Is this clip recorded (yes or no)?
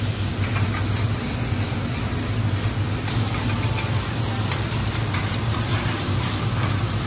yes